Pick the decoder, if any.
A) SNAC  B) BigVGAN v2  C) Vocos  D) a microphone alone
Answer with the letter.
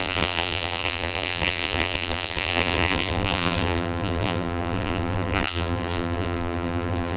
B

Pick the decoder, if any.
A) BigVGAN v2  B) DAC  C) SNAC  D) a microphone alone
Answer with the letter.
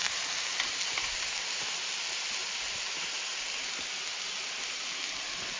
D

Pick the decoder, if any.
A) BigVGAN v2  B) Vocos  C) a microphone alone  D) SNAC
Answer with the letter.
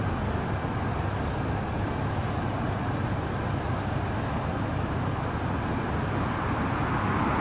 C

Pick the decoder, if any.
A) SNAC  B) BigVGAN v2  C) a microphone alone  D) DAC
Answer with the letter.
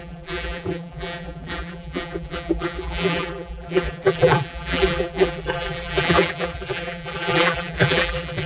B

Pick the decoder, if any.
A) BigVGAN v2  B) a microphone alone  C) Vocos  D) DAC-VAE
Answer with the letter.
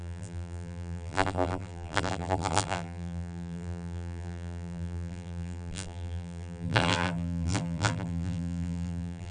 A